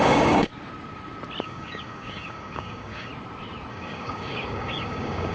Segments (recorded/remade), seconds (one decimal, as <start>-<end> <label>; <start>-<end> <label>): 0.0-0.5 remade; 0.5-1.4 recorded; 1.4-3.1 remade; 3.1-3.7 recorded; 3.7-5.3 remade

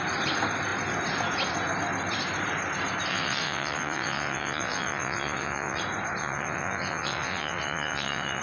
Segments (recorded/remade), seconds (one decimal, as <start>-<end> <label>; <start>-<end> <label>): 0.0-3.1 recorded; 3.1-5.8 remade; 5.8-6.2 recorded; 6.2-8.4 remade

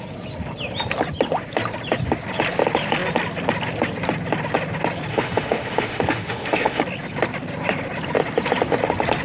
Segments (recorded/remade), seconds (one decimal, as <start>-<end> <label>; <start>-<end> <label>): 0.0-5.1 recorded; 5.1-6.8 remade; 6.8-9.2 recorded

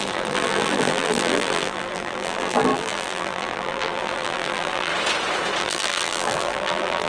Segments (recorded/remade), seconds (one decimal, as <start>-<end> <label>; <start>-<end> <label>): 0.0-4.9 remade; 4.9-5.6 recorded; 5.6-7.1 remade